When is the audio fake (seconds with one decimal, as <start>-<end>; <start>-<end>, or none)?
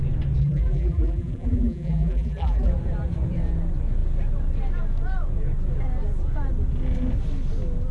0.4-2.7